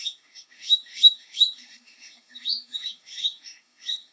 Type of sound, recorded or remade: remade